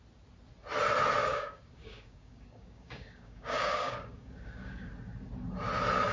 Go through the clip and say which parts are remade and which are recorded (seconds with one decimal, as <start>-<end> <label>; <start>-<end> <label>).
0.0-1.2 recorded; 1.2-4.9 remade; 4.9-6.1 recorded